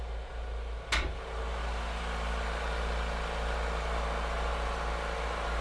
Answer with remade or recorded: recorded